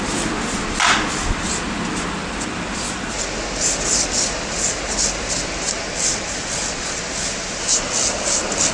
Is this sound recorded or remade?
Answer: recorded